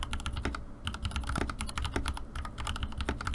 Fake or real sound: real